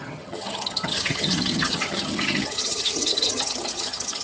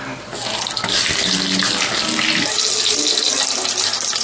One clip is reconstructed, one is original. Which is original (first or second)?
second